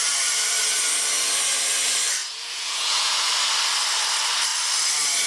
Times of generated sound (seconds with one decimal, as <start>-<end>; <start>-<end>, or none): 2.2-3.3